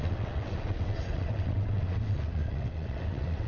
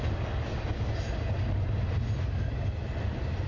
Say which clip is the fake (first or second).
first